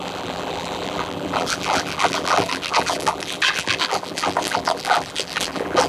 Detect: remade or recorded remade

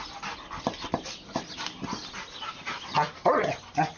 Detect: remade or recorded recorded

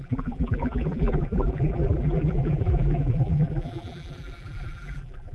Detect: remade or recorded remade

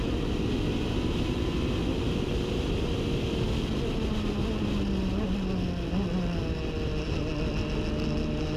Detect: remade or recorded recorded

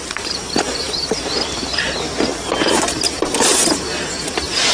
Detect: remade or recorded remade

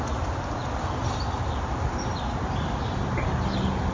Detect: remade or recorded recorded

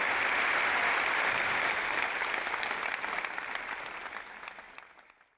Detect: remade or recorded recorded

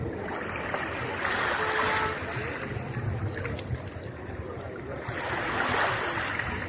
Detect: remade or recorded recorded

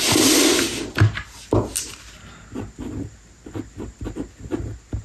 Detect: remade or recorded recorded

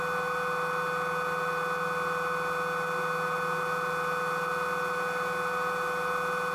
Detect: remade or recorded recorded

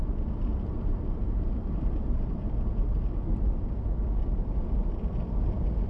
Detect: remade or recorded remade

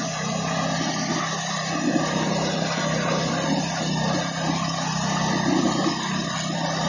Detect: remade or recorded recorded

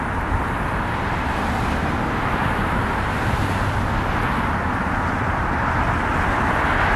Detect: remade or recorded recorded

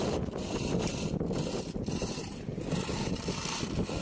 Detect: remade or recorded remade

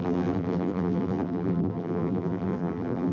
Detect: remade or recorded remade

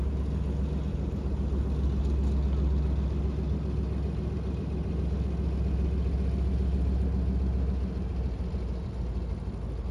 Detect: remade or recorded recorded